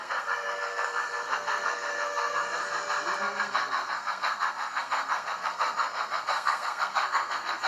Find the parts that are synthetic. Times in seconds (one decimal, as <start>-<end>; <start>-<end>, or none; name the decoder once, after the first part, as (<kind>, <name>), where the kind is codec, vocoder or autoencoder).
0.0-2.6 (codec, SNAC); 3.2-7.7